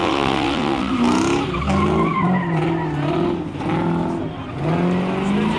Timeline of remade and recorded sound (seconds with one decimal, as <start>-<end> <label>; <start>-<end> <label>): 0.0-0.9 remade; 0.9-5.6 recorded